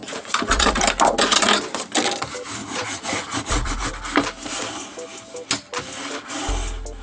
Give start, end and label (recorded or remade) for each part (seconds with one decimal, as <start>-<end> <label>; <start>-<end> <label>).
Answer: 0.0-0.8 remade; 0.8-2.6 recorded; 2.6-3.9 remade; 3.9-7.0 recorded